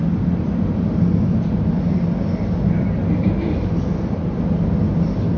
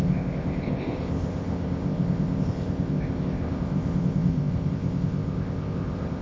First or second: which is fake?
second